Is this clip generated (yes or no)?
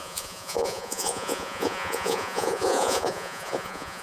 yes